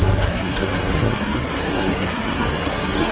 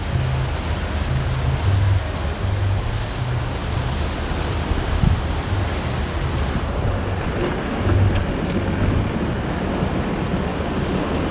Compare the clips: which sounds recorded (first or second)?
second